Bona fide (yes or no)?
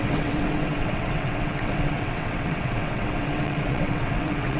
no